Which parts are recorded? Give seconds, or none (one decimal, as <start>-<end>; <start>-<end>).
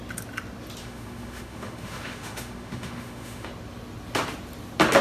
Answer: 0.0-0.8; 3.5-5.0